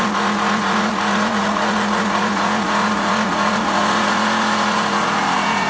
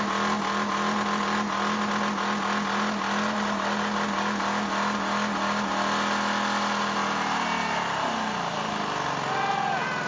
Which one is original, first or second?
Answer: second